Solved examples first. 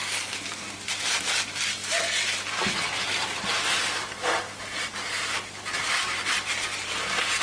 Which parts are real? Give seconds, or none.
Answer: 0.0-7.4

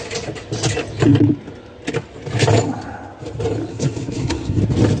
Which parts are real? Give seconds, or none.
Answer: 0.0-3.7; 4.6-5.0

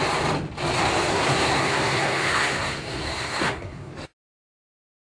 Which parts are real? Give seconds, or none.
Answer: 0.0-1.1; 3.9-5.1

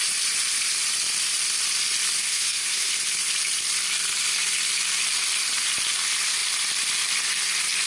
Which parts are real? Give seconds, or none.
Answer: 0.0-2.2; 2.9-7.9